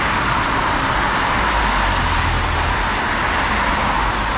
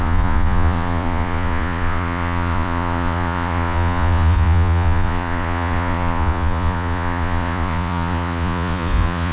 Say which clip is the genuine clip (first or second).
first